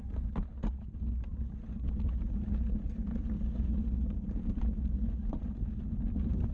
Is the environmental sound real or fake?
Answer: real